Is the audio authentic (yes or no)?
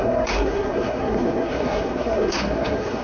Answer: no